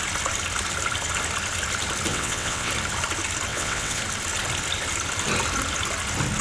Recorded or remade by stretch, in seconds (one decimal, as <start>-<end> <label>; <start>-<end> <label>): 0.0-2.1 recorded; 2.1-2.7 remade; 2.7-3.5 recorded; 3.5-4.0 remade; 4.0-6.4 recorded